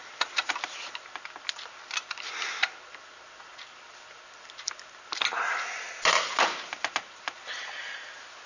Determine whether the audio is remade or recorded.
recorded